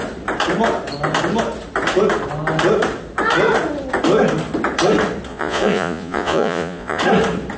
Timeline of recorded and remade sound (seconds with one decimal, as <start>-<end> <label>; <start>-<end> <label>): 0.0-5.3 recorded; 5.3-7.0 remade; 7.0-7.6 recorded